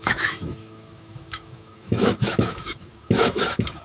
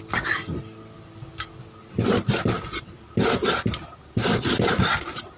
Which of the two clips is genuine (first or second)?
second